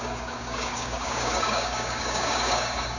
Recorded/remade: remade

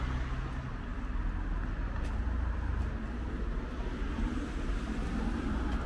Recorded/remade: recorded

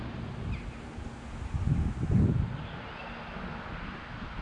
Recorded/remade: recorded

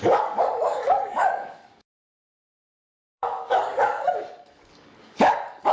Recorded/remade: remade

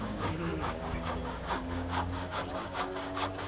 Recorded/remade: remade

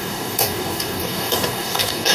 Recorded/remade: remade